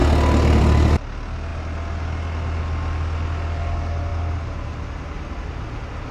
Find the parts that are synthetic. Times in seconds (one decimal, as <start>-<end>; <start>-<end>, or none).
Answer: none